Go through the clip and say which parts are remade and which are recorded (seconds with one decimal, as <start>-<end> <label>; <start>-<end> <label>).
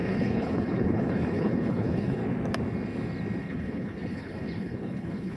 0.0-2.2 remade; 2.2-3.4 recorded; 3.4-5.4 remade